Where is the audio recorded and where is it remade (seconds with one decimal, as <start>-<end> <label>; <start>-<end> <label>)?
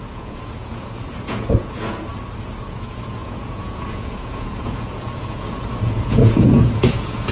0.0-2.1 remade; 2.1-2.6 recorded; 2.6-7.3 remade